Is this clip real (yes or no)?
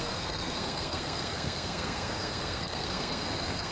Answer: no